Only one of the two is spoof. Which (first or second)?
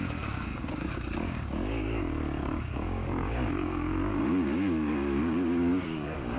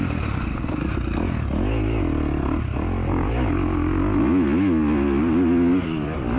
first